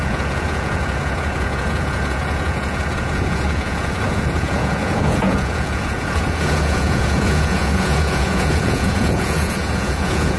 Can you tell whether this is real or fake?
fake